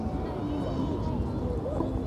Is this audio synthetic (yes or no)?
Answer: no